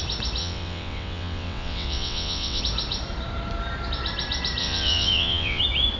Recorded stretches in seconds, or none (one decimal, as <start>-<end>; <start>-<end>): 0.0-0.4; 2.6-4.6; 5.6-6.0